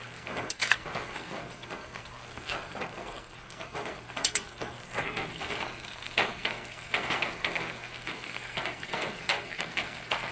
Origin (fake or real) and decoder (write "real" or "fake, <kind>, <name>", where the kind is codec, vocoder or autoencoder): fake, codec, SNAC